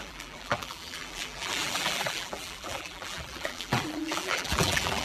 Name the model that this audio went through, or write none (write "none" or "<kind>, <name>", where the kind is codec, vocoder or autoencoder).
vocoder, BigVGAN v2